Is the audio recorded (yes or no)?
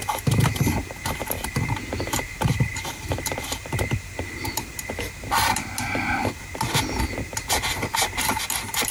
yes